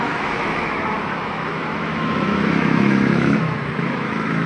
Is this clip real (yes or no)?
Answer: no